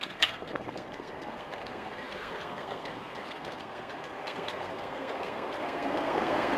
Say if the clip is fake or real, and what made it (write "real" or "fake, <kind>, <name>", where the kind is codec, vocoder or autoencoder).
fake, codec, SNAC